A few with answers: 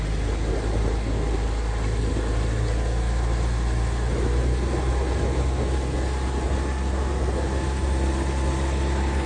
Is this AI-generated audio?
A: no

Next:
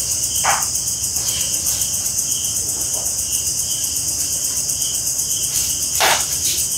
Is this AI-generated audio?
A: no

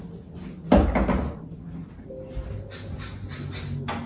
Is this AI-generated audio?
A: no